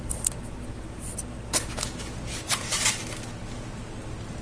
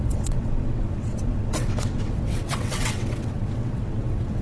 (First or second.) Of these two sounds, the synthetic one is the second